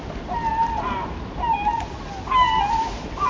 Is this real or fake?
real